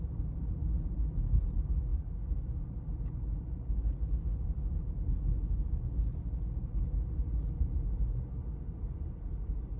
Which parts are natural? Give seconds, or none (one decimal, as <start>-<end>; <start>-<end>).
0.0-9.8